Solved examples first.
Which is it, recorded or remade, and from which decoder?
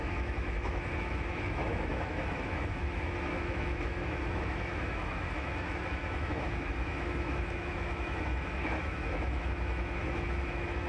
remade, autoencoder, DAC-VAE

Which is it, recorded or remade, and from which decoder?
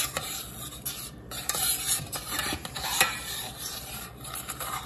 remade, vocoder, BigVGAN v2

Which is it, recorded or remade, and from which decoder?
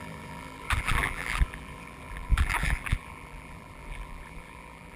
remade, vocoder, BigVGAN v2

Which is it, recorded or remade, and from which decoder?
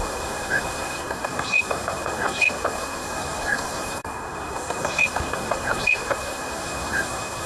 remade, codec, SNAC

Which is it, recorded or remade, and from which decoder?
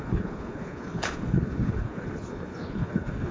remade, codec, HILCodec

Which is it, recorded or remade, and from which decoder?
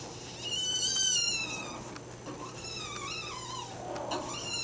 recorded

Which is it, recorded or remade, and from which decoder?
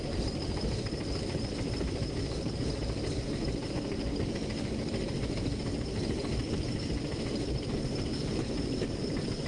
remade, vocoder, BigVGAN v2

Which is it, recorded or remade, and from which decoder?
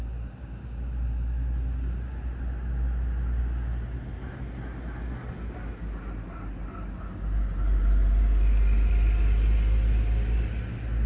recorded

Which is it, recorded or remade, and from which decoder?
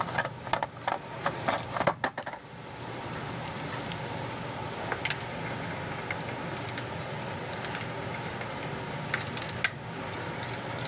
recorded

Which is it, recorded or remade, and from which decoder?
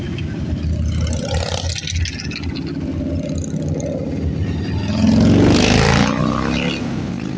recorded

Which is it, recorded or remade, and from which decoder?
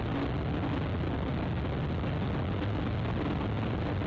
recorded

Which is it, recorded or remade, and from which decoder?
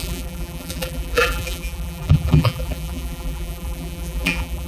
remade, vocoder, BigVGAN v2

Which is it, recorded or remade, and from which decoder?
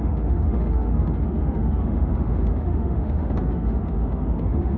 remade, autoencoder, DAC-VAE